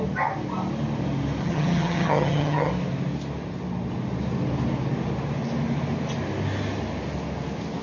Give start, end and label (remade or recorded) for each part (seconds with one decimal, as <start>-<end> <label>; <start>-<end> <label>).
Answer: 0.0-1.4 recorded; 1.4-2.7 remade; 2.7-7.8 recorded